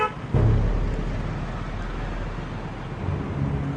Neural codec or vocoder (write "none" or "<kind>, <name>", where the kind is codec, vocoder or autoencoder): none